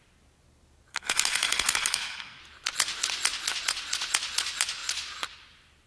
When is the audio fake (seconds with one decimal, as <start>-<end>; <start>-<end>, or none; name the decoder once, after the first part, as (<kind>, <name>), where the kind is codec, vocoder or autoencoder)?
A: 0.9-2.4 (codec, SNAC)